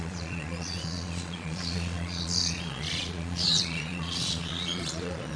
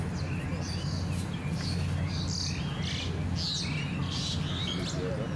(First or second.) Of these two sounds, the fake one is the first